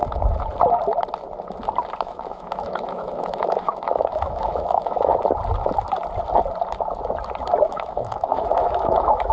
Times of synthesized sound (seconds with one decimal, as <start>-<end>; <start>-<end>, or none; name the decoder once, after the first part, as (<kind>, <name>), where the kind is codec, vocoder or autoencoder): 2.0-5.1 (autoencoder, DAC-VAE); 7.6-9.3